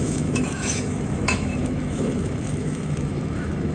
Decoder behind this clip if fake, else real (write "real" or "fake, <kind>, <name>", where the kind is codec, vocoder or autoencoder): fake, autoencoder, DAC-VAE